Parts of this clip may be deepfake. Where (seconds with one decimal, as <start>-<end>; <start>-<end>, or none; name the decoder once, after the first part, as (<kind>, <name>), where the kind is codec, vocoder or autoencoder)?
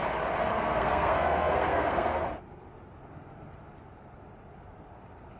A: 0.5-2.2 (codec, SNAC)